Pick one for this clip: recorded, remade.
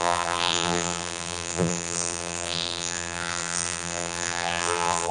remade